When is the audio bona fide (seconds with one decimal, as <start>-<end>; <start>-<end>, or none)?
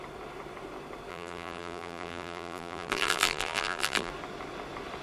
0.0-1.1; 4.1-5.0